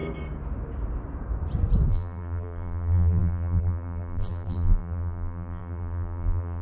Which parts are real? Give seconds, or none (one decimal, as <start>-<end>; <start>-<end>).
0.0-1.9